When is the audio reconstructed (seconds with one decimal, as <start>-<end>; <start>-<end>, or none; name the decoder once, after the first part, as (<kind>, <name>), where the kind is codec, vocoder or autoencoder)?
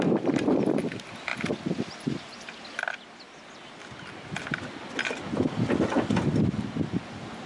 none